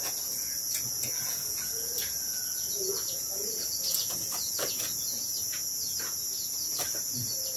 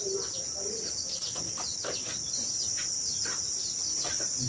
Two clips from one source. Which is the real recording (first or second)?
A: second